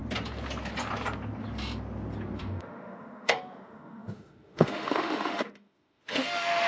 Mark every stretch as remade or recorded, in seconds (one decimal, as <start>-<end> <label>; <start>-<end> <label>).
0.0-2.4 recorded; 2.4-6.7 remade